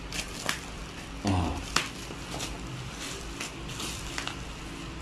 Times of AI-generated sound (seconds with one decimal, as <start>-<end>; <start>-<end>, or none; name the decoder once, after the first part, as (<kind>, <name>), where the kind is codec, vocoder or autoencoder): none